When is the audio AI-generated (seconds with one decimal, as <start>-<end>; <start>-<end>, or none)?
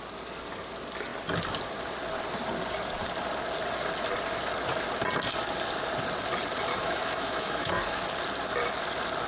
6.7-7.7